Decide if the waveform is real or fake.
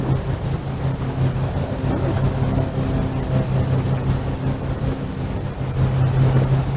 real